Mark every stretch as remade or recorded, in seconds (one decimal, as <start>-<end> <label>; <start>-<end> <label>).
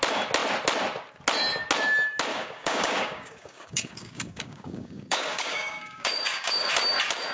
0.0-2.3 recorded; 2.3-6.7 remade; 6.7-7.3 recorded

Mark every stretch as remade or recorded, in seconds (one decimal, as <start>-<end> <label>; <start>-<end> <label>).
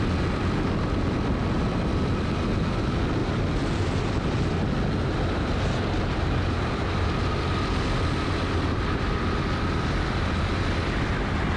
0.0-11.6 recorded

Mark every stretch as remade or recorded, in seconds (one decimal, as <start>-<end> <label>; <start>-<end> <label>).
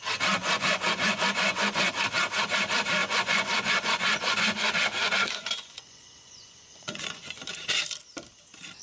0.0-0.4 recorded; 0.4-1.9 remade; 1.9-3.0 recorded; 3.0-7.4 remade; 7.4-8.8 recorded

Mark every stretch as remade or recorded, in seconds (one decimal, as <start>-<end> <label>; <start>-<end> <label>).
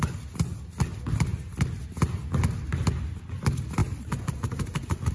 0.0-5.1 recorded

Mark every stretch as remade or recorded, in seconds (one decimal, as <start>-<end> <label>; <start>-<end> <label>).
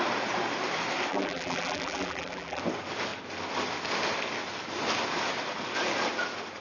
0.0-1.1 recorded; 1.1-2.6 remade; 2.6-6.6 recorded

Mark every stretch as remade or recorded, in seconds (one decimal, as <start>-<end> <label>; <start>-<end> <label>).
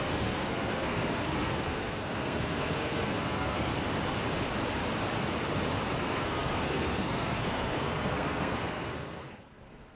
0.0-3.7 remade; 3.7-6.0 recorded; 6.0-10.0 remade